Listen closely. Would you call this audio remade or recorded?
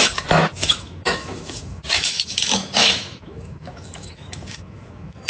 remade